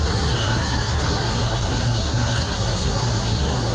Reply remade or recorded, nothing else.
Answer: remade